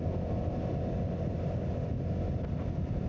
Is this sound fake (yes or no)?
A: no